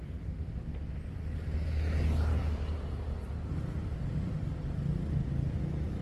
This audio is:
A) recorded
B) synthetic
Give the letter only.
A